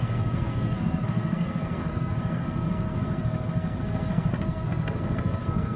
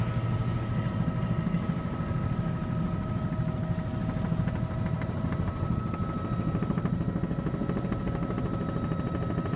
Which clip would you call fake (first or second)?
first